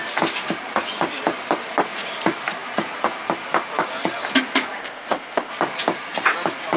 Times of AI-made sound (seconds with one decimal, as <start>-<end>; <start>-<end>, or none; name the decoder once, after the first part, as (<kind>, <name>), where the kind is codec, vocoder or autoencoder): 4.8-5.5 (codec, ZipCodec)